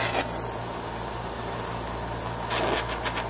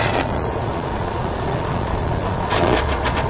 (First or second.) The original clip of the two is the first